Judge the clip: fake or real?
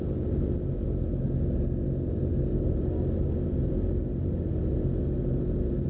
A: real